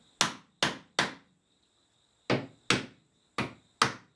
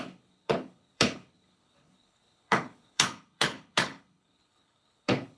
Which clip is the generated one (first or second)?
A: second